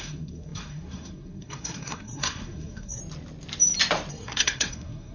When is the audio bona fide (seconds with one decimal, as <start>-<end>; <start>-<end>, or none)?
3.0-4.1